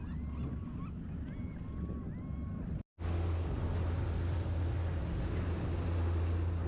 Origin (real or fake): real